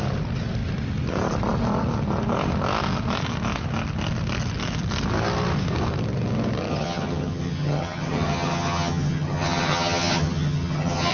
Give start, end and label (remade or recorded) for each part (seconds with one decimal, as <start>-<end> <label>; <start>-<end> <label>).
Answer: 0.0-6.7 recorded; 6.7-11.1 remade